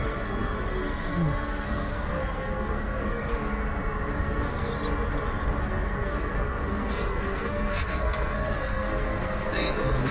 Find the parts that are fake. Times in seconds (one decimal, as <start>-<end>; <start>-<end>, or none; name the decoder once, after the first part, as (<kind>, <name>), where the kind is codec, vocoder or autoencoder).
0.0-3.6 (codec, SNAC); 4.2-4.7; 5.6-10.1